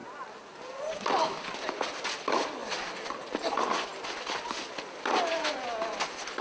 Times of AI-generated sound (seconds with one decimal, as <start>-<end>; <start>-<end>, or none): 2.6-3.1